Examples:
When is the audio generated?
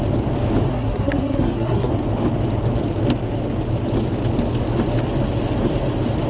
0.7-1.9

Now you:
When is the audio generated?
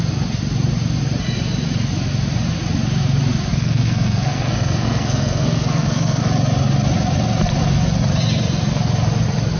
3.5-6.2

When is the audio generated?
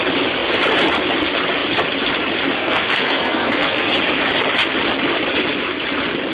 2.6-3.9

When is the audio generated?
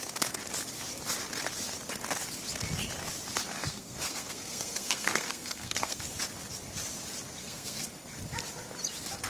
3.6-6.0; 7.4-7.9